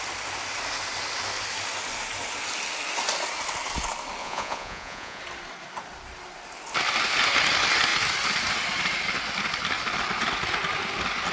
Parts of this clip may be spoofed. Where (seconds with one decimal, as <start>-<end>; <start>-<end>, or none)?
4.2-5.2